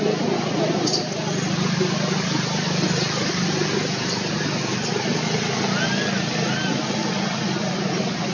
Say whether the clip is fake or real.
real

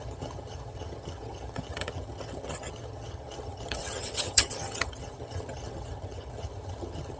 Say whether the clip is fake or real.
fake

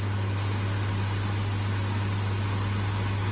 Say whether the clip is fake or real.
real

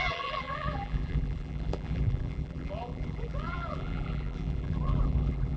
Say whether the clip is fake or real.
fake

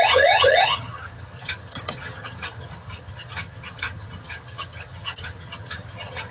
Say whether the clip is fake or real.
fake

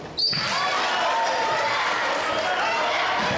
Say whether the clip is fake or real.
real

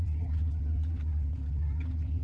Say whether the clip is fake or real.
fake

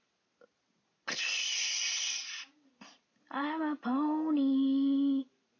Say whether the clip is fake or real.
real